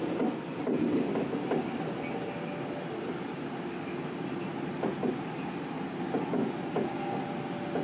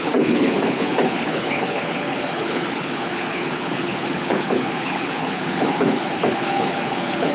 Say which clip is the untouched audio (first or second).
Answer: first